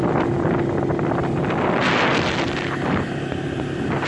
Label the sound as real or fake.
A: real